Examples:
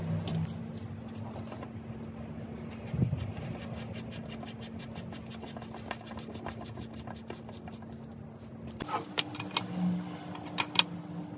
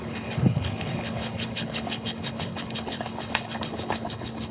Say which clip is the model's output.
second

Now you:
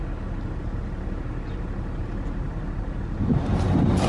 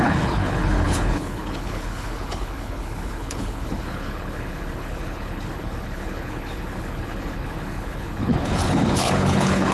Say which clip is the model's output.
second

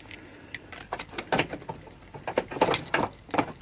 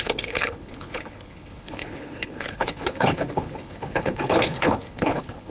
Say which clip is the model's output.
second